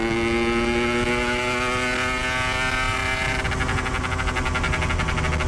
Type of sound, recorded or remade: recorded